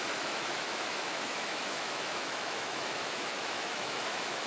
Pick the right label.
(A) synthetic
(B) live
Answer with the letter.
A